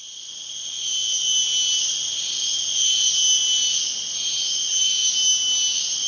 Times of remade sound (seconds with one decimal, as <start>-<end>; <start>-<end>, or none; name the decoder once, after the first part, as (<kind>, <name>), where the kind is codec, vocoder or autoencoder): none